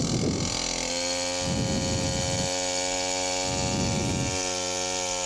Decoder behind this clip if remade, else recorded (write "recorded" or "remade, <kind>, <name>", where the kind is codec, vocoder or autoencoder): recorded